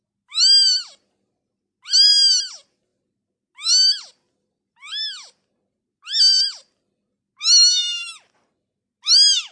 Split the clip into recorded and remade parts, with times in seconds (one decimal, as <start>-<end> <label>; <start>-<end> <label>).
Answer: 0.0-9.5 recorded